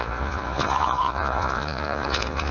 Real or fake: fake